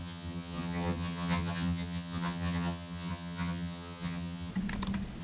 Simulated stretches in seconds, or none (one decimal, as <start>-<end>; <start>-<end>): 0.0-4.5